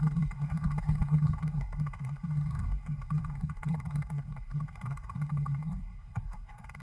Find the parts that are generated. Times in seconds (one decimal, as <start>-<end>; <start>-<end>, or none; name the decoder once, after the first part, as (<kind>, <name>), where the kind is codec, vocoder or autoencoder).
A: 0.0-6.8 (codec, SNAC)